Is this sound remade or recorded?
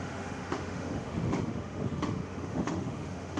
remade